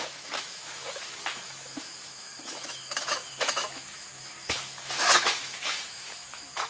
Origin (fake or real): fake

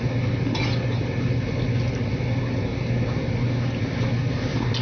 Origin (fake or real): real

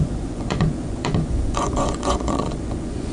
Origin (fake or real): fake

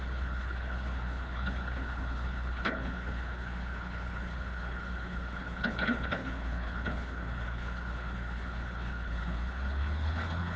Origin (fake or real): fake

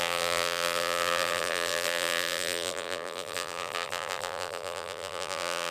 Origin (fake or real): fake